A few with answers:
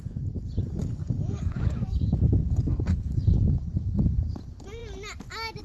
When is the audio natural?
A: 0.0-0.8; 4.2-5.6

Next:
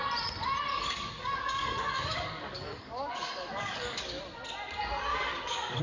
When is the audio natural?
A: 0.0-0.7; 4.2-5.1

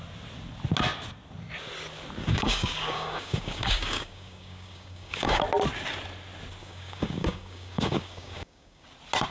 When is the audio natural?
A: 0.0-2.2; 5.4-6.6; 8.9-9.3

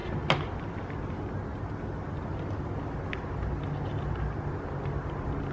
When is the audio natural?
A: 0.0-5.5

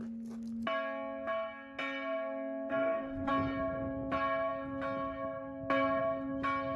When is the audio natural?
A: 0.0-2.7; 3.3-6.8

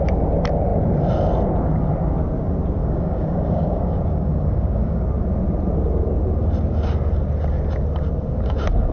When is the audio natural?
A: 0.0-2.8; 5.1-8.9

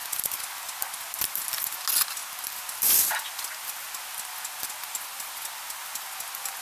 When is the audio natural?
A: 0.0-6.6